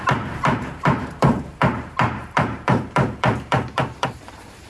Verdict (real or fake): fake